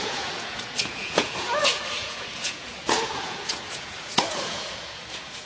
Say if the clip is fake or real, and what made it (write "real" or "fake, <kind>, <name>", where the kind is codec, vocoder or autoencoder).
fake, vocoder, Vocos